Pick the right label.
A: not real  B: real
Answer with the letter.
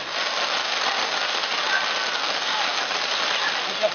B